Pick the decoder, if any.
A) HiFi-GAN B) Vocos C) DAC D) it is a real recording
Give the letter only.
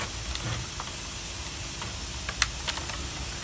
D